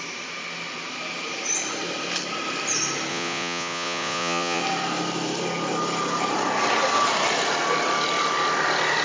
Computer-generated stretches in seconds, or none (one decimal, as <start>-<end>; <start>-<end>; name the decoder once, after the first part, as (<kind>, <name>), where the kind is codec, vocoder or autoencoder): 3.1-4.6 (vocoder, Vocos)